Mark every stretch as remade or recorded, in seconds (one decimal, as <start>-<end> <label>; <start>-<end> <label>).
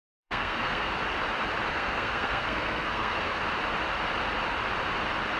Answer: 0.0-0.9 remade; 0.9-1.7 recorded; 1.7-3.4 remade; 3.4-5.4 recorded